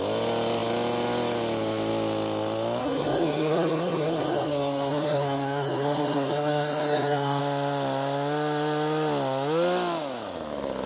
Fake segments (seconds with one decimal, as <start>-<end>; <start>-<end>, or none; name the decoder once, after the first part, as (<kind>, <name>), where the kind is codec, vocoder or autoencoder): 2.8-7.4 (codec, SNAC)